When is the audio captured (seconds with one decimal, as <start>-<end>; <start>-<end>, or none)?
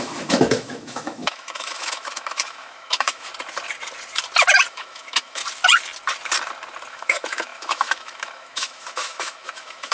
3.3-4.7; 5.4-6.9